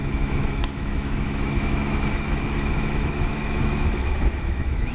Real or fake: fake